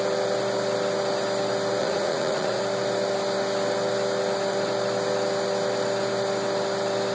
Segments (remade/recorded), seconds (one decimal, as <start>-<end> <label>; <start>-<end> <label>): 0.0-1.8 recorded; 1.8-2.6 remade; 2.6-7.1 recorded